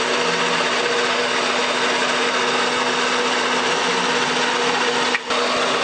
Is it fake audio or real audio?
real